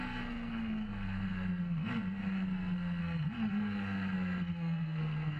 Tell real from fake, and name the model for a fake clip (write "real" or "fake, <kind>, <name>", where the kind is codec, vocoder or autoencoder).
fake, codec, SNAC